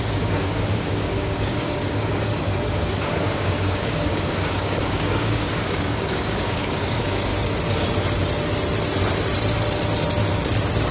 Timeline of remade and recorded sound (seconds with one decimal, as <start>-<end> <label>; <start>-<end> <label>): 0.0-7.3 remade; 7.3-10.9 recorded